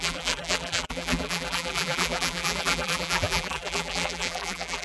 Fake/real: fake